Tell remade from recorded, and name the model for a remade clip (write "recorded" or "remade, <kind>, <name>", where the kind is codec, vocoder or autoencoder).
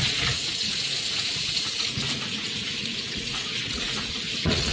remade, vocoder, Vocos